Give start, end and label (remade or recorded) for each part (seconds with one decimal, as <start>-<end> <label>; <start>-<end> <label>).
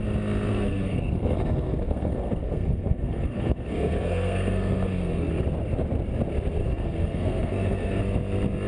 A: 0.0-0.5 recorded; 0.5-5.3 remade; 5.3-6.6 recorded; 6.6-8.0 remade; 8.0-8.7 recorded